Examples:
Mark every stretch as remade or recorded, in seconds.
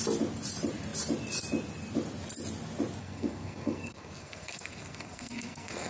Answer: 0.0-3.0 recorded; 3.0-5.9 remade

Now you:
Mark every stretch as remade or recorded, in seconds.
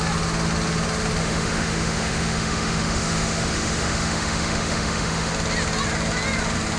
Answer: 0.0-1.2 recorded; 1.2-5.3 remade; 5.3-6.8 recorded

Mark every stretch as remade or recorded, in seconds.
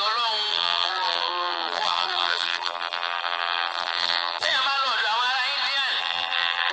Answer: 0.0-0.5 recorded; 0.5-4.5 remade; 4.5-6.0 recorded; 6.0-6.7 remade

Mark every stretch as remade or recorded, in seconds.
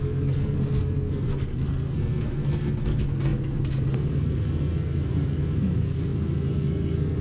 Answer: 0.0-7.2 remade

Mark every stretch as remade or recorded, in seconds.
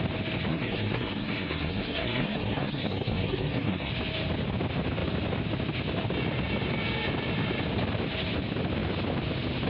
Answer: 0.0-0.5 recorded; 0.5-3.9 remade; 3.9-9.7 recorded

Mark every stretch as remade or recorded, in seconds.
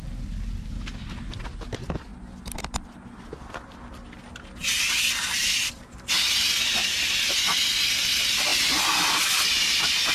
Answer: 0.0-10.1 recorded